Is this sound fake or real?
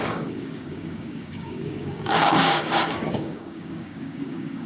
fake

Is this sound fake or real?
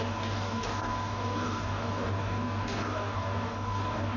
fake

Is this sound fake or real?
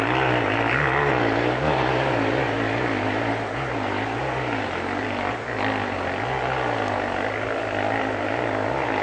real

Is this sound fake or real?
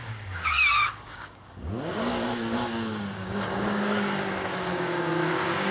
fake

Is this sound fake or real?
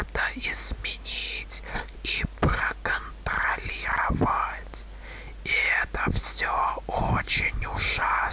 real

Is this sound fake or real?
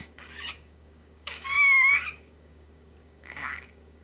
fake